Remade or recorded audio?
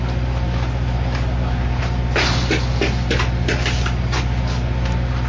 recorded